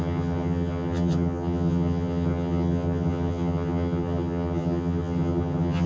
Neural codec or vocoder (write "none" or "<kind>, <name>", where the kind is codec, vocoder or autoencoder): vocoder, HiFi-GAN